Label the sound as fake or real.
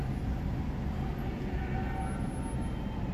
real